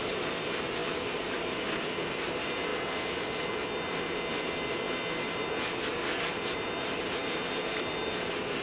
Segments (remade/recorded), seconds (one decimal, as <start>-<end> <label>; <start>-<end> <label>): 0.0-0.8 recorded; 0.8-2.0 remade; 2.0-8.6 recorded